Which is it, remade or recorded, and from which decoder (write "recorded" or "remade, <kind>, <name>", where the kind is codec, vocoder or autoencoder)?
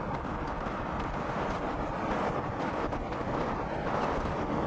remade, vocoder, BigVGAN v2